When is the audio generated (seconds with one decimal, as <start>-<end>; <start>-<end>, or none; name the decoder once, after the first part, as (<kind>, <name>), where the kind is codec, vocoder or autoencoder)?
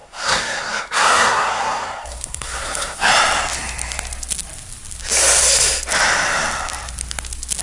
0.0-3.1 (codec, SNAC)